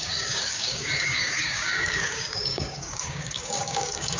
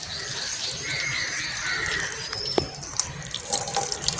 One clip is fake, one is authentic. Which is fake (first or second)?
first